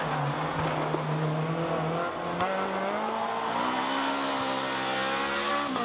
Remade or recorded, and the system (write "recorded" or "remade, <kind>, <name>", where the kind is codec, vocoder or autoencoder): recorded